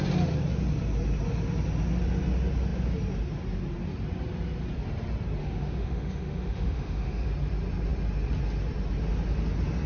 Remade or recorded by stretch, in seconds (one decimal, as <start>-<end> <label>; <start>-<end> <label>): 0.0-5.4 recorded; 5.4-7.3 remade; 7.3-9.9 recorded